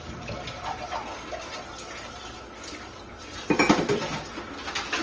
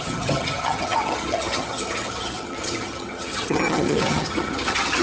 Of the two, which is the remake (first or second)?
second